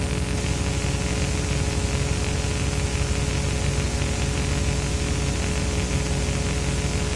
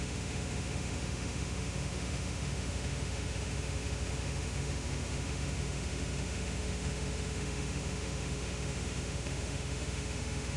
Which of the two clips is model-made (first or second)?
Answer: second